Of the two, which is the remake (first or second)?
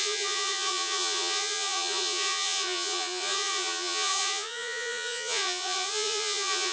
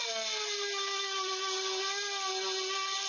first